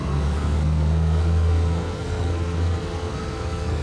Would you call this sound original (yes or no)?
no